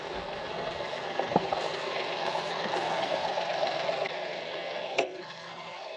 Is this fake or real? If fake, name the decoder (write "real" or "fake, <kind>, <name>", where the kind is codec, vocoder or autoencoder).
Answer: fake, codec, SNAC